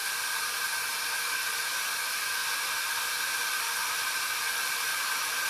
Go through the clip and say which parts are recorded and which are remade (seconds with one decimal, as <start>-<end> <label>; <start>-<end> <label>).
0.0-3.8 recorded; 3.8-4.4 remade; 4.4-4.9 recorded; 4.9-5.5 remade

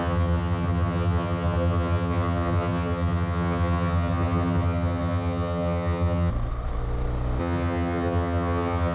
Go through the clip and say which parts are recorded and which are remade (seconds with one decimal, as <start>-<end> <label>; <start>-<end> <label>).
0.0-6.3 remade; 6.3-7.4 recorded; 7.4-8.9 remade